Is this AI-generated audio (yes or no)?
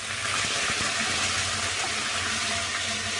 no